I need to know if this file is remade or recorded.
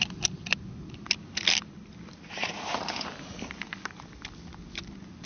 recorded